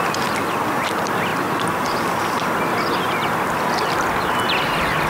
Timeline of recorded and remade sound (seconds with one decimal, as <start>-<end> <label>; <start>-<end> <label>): 0.0-5.1 recorded